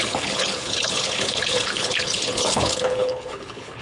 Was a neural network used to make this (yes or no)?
yes